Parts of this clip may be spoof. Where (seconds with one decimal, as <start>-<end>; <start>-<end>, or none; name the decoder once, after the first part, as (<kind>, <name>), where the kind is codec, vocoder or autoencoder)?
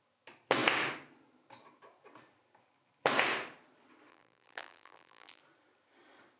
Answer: 4.1-5.4 (vocoder, BigVGAN v2)